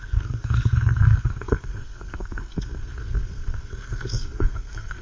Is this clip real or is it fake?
fake